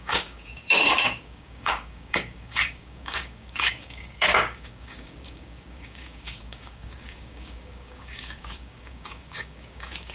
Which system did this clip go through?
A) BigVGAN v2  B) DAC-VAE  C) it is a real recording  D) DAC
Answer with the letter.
D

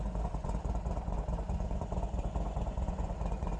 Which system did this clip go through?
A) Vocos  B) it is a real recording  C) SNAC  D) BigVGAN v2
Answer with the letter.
A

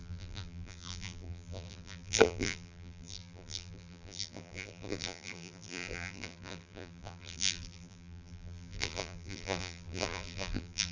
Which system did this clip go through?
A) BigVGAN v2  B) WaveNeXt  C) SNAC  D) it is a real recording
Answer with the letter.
A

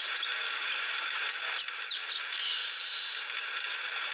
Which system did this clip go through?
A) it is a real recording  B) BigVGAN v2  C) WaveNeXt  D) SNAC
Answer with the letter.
B